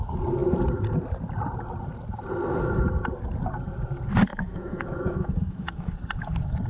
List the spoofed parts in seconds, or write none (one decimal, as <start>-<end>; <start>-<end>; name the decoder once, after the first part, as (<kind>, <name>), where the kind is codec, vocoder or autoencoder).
4.3-5.9 (autoencoder, DAC-VAE)